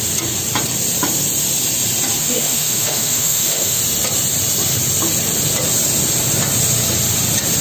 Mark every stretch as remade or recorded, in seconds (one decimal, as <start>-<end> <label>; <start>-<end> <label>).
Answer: 0.0-2.2 recorded; 2.2-3.8 remade; 3.8-7.6 recorded